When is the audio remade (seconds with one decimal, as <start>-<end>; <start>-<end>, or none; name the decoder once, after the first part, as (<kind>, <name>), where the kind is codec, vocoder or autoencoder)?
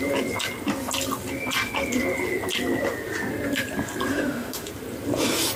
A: 4.1-4.7 (autoencoder, DAC-VAE)